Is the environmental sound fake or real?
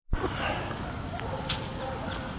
real